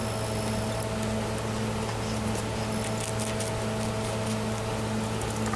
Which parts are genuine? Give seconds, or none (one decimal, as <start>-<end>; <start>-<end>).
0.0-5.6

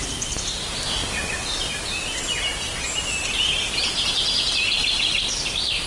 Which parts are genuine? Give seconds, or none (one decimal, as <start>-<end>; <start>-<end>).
0.0-5.9

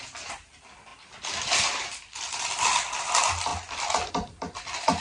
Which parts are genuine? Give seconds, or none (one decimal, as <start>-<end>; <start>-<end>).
0.0-5.0